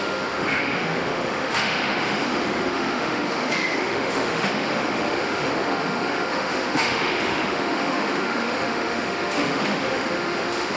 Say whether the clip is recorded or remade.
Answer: remade